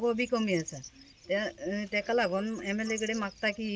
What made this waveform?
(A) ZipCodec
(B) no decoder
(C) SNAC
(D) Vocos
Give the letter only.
B